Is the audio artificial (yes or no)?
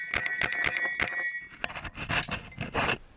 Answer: no